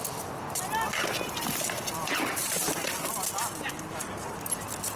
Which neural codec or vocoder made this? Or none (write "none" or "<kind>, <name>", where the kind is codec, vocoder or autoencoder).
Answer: none